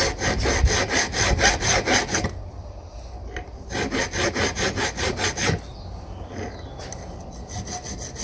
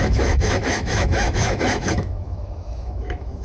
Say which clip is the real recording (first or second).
first